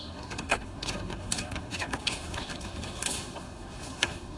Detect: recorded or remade remade